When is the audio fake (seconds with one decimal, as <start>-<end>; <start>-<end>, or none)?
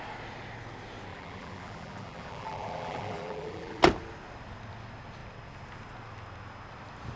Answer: 1.1-3.8